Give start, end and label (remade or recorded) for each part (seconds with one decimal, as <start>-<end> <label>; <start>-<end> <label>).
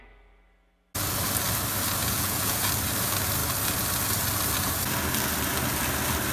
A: 0.0-2.0 recorded; 2.0-2.7 remade; 2.7-6.3 recorded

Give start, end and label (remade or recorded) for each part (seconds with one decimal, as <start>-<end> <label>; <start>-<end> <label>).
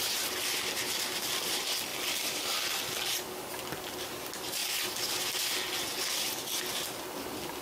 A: 0.0-7.6 recorded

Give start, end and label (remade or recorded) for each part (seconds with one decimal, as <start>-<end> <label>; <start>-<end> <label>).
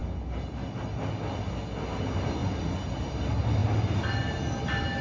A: 0.0-5.0 recorded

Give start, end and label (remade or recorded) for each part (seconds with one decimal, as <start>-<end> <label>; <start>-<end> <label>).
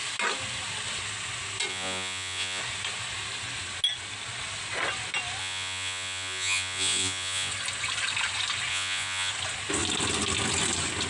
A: 0.0-1.7 recorded; 1.7-2.6 remade; 2.6-5.4 recorded; 5.4-7.5 remade; 7.5-8.7 recorded; 8.7-9.3 remade; 9.3-11.1 recorded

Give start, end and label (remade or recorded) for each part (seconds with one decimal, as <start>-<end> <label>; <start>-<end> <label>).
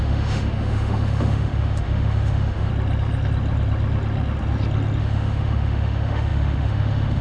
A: 0.0-2.7 remade; 2.7-5.0 recorded; 5.0-7.2 remade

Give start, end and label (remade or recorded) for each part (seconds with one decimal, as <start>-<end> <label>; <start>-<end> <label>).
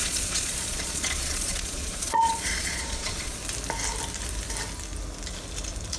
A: 0.0-3.4 remade; 3.4-6.0 recorded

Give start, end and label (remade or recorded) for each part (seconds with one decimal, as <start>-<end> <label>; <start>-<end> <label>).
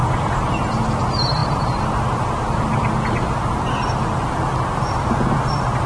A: 0.0-5.9 recorded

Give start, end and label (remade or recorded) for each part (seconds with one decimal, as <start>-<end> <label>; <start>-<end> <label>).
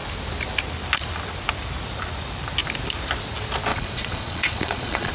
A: 0.0-3.7 recorded; 3.7-5.1 remade